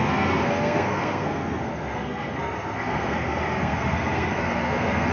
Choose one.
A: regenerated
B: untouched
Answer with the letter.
A